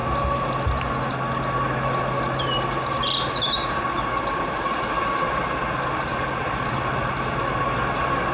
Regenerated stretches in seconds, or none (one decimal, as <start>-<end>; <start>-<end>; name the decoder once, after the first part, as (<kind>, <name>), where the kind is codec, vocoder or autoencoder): none